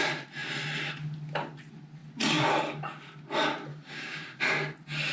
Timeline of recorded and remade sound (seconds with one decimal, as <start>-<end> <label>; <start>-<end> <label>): 0.0-3.7 recorded; 3.7-4.4 remade; 4.4-5.1 recorded